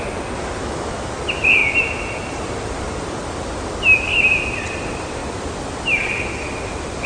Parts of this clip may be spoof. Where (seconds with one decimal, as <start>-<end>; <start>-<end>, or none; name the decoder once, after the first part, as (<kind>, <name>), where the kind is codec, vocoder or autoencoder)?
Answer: 0.6-1.1 (autoencoder, DAC-VAE)

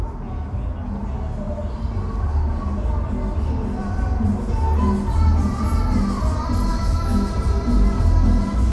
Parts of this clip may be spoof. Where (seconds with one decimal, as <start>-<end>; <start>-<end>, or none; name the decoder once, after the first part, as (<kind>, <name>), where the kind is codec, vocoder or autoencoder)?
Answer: 6.7-7.3 (autoencoder, DAC-VAE)

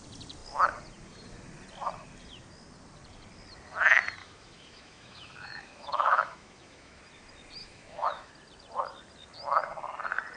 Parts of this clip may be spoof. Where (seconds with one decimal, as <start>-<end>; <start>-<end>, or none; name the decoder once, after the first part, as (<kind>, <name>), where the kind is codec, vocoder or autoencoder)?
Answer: 4.2-7.0 (autoencoder, DAC-VAE); 7.6-8.3

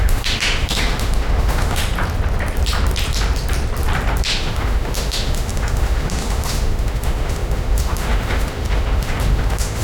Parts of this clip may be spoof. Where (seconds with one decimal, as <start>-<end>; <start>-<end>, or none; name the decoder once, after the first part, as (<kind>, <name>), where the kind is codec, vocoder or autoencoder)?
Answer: 0.0-1.8 (autoencoder, DAC-VAE); 4.3-9.8